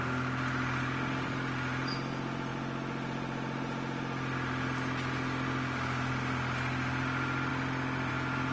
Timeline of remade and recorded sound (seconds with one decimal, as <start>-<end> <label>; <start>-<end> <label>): 0.0-8.5 recorded